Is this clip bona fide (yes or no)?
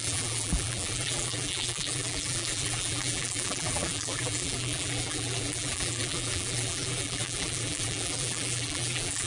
no